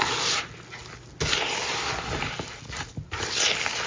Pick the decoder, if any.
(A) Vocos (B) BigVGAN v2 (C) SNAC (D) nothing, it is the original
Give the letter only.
D